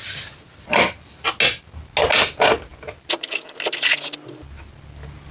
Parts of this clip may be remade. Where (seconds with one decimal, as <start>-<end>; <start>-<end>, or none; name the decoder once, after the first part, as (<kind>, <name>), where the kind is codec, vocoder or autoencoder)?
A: none